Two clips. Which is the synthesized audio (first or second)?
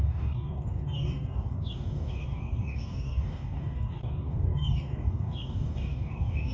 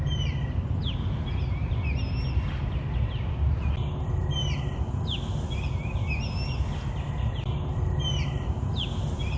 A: first